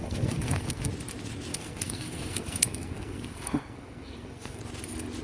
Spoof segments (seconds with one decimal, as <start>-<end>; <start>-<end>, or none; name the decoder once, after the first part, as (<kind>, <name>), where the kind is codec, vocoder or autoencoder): 0.0-0.9 (codec, SNAC); 1.5-4.6